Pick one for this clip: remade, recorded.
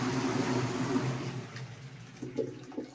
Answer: recorded